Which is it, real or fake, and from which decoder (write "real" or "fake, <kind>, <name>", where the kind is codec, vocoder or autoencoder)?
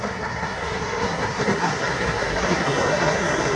fake, codec, SNAC